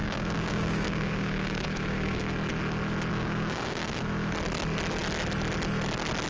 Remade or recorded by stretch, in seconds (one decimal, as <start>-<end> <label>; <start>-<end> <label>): 0.0-2.3 remade; 2.3-3.1 recorded; 3.1-4.0 remade; 4.0-6.3 recorded